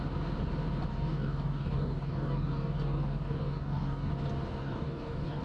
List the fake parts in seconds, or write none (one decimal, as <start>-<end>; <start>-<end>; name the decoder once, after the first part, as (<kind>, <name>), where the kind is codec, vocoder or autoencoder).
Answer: 0.9-4.1 (codec, DAC); 4.6-5.4